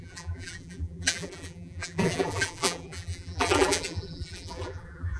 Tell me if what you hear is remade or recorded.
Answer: remade